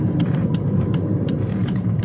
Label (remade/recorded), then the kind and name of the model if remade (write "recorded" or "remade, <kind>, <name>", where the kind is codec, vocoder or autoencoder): remade, vocoder, BigVGAN v2